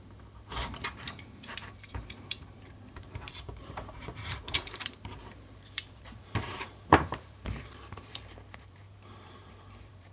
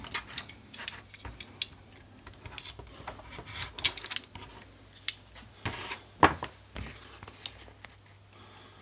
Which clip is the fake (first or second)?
first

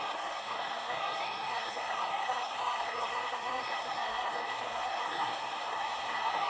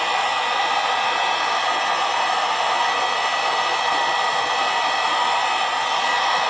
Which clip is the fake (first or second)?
first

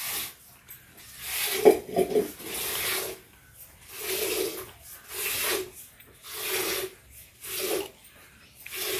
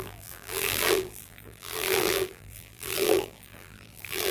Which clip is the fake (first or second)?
second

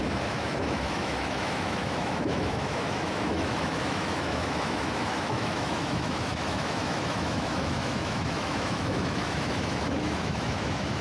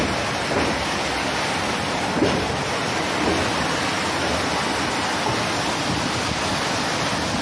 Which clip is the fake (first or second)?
first